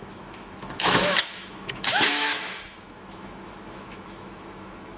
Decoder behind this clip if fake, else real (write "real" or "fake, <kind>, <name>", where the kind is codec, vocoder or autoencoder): fake, autoencoder, DAC-VAE